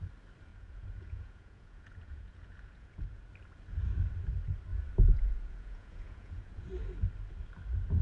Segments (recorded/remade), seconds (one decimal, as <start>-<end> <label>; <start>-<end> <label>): 0.0-0.5 recorded; 0.5-3.3 remade; 3.3-4.7 recorded; 4.7-6.7 remade; 6.7-8.0 recorded